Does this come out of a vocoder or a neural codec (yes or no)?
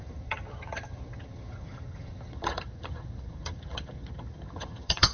yes